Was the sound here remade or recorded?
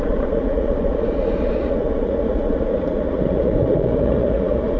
remade